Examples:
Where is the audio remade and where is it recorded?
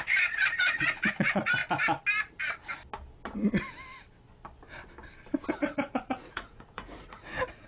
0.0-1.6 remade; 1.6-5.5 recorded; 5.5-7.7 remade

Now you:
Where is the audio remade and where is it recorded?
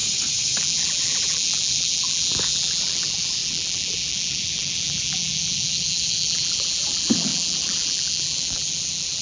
0.0-0.6 recorded; 0.6-9.2 remade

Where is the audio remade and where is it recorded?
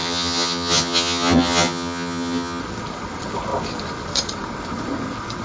0.0-2.6 remade; 2.6-5.4 recorded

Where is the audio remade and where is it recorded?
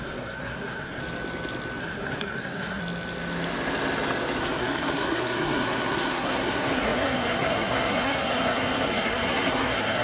0.0-1.0 remade; 1.0-1.8 recorded; 1.8-2.8 remade; 2.8-4.4 recorded; 4.4-10.0 remade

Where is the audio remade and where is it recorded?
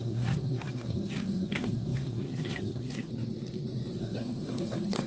0.0-3.1 remade; 3.1-4.0 recorded; 4.0-5.1 remade